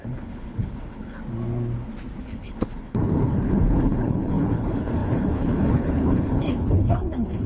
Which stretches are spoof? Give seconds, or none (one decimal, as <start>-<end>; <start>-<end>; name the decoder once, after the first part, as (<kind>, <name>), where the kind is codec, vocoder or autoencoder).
0.0-1.2 (codec, HILCodec); 2.2-7.5